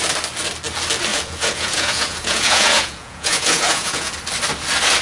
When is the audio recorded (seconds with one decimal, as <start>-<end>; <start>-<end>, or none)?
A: 0.0-1.1; 4.1-5.0